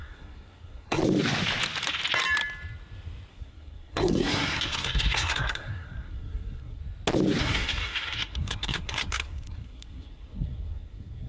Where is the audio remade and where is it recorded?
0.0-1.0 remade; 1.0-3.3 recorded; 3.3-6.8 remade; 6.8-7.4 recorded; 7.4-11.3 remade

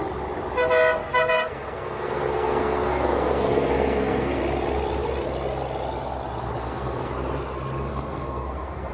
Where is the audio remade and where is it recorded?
0.0-1.0 recorded; 1.0-4.4 remade; 4.4-6.6 recorded; 6.6-7.1 remade; 7.1-7.9 recorded; 7.9-8.9 remade

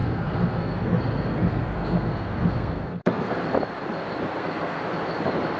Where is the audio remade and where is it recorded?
0.0-3.4 remade; 3.4-4.3 recorded; 4.3-4.8 remade; 4.8-5.6 recorded

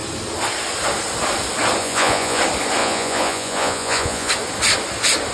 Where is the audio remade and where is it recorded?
0.0-1.8 recorded; 1.8-2.4 remade; 2.4-2.8 recorded; 2.8-4.3 remade; 4.3-5.3 recorded

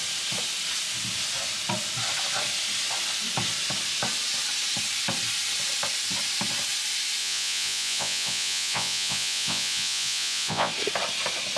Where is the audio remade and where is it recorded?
0.0-7.2 recorded; 7.2-10.7 remade; 10.7-11.6 recorded